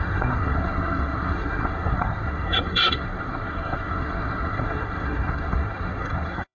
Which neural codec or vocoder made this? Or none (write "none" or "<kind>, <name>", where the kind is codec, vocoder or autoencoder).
codec, SNAC